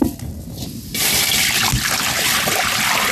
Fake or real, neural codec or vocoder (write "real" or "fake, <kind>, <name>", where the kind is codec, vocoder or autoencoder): real